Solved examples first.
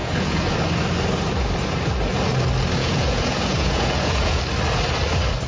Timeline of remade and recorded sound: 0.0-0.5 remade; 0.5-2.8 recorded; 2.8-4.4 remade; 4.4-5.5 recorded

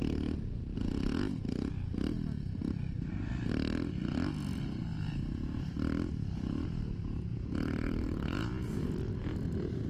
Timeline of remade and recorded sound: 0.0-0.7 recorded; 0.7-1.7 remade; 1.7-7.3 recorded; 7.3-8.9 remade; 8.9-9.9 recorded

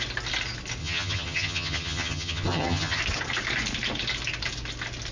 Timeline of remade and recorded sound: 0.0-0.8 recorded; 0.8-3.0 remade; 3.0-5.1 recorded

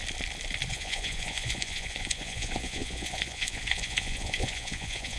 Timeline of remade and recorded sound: 0.0-0.7 recorded; 0.7-5.2 remade